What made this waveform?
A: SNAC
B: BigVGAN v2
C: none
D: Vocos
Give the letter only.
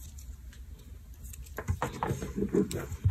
C